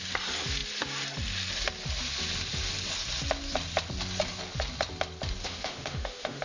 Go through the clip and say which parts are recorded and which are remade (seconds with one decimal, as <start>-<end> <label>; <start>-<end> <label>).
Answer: 0.0-5.4 recorded; 5.4-6.4 remade